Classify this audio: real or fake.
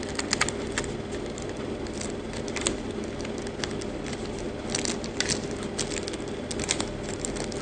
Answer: real